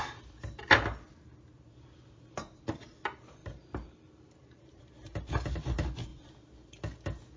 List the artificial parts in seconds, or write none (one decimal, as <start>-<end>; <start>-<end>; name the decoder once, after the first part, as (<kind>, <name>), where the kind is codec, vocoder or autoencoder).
3.4-5.2 (vocoder, BigVGAN v2)